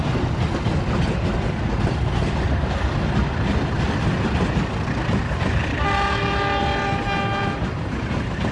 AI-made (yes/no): no